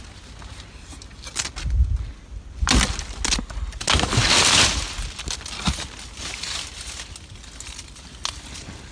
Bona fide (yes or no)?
yes